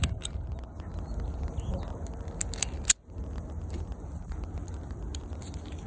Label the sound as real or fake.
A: real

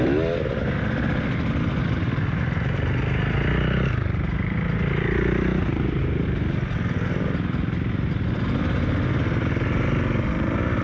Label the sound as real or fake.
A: real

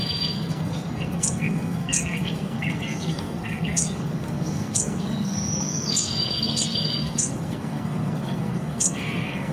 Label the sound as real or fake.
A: fake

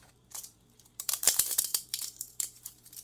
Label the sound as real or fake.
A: fake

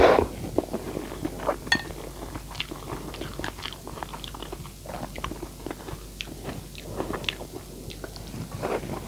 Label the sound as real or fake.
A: real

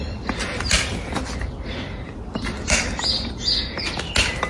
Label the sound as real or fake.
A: real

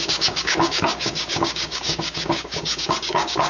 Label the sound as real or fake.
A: fake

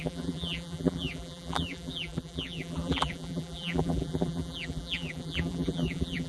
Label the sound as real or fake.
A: fake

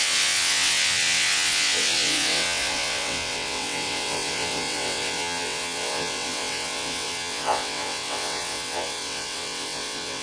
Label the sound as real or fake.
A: fake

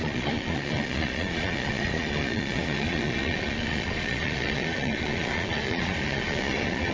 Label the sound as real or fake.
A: fake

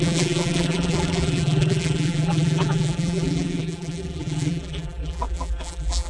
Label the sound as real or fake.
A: fake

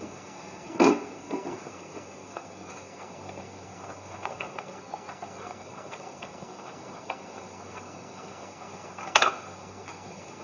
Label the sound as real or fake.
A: fake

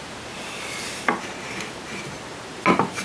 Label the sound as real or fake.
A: real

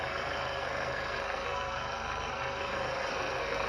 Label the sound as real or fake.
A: fake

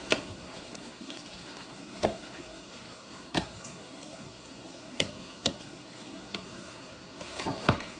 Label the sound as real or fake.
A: fake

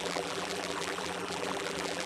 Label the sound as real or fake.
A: fake